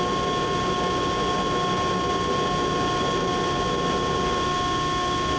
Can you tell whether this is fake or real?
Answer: real